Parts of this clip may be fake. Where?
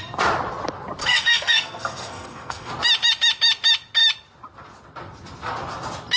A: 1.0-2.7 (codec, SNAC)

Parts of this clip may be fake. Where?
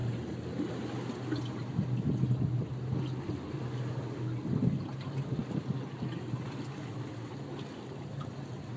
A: none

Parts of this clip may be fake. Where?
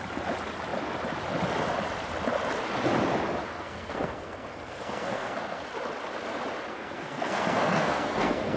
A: 3.4-5.6 (codec, SNAC); 6.7-8.6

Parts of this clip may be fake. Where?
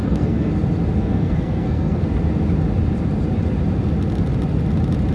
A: 0.0-0.5 (codec, SNAC); 1.0-2.0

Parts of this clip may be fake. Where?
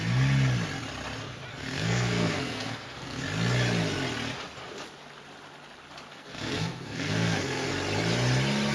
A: 1.5-3.2 (codec, SNAC); 6.1-7.7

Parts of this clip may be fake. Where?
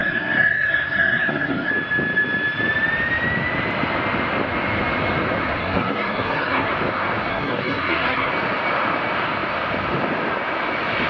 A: 0.0-1.7 (codec, SNAC); 5.6-6.7; 7.3-8.3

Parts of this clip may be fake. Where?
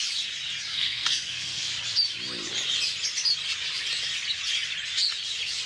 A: 0.7-1.7 (codec, SNAC)